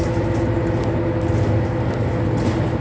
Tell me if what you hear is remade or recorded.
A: recorded